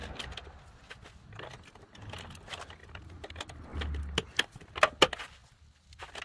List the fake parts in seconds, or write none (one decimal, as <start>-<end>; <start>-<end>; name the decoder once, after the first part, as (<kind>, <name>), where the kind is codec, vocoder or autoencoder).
2.8-3.3 (vocoder, BigVGAN v2)

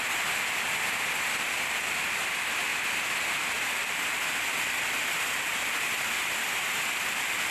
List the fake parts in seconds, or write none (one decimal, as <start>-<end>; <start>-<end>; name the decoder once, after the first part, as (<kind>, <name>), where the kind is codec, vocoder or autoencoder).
none

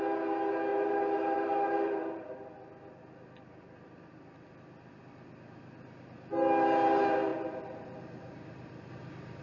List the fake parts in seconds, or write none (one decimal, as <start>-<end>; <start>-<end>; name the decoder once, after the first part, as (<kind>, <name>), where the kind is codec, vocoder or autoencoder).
0.7-2.5 (vocoder, BigVGAN v2); 7.3-8.9

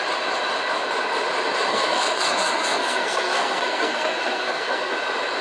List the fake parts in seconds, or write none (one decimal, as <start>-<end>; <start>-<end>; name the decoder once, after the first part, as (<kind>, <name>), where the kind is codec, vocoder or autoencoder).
1.7-4.9 (codec, SNAC)

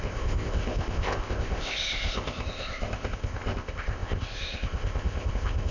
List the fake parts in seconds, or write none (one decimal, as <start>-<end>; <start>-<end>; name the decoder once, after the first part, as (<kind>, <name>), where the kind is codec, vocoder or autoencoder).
0.0-5.7 (codec, ZipCodec)

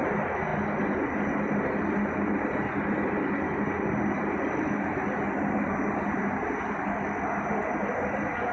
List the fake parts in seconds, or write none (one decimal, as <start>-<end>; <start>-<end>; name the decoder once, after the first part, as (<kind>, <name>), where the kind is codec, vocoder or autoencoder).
none